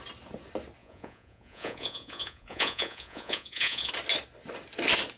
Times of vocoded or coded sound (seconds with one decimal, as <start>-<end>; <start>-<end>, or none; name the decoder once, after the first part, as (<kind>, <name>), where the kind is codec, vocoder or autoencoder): 0.8-3.9 (vocoder, Vocos)